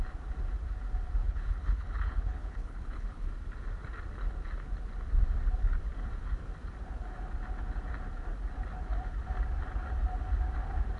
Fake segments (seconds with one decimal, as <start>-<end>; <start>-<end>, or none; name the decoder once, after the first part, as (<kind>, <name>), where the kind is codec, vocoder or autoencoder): 1.2-3.3 (codec, HILCodec)

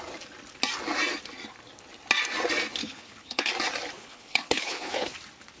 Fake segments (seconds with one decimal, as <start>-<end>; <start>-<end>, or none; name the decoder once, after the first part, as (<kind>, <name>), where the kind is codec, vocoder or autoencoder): 2.8-3.5 (codec, HILCodec); 4.0-5.1

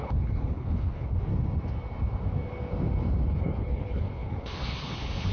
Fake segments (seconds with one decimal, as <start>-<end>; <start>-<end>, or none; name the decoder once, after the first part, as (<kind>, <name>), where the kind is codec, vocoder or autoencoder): 0.0-1.3 (codec, HILCodec); 3.3-5.3

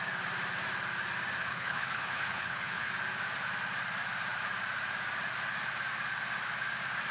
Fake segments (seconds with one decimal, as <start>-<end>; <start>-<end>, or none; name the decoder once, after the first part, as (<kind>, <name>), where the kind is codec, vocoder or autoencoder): 1.4-2.9 (codec, HILCodec)

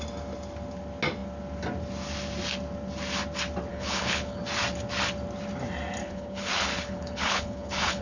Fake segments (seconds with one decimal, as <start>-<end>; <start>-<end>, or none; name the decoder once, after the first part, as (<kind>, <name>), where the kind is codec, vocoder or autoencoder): 3.7-4.4 (codec, HILCodec); 6.0-8.0

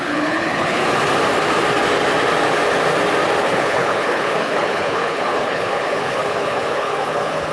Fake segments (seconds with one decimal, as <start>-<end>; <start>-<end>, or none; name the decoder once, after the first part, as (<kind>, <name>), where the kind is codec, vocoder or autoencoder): 0.0-0.8 (codec, HILCodec); 3.4-7.5